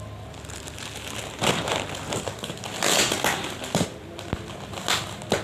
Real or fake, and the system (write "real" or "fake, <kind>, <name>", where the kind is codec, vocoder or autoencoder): real